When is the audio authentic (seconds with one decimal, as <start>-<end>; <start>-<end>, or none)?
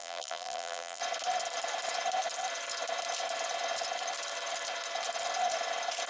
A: 1.0-6.1